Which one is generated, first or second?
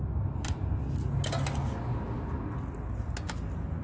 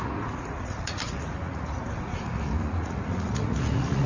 second